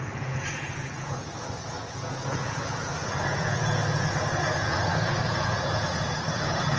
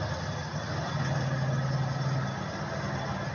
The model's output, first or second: first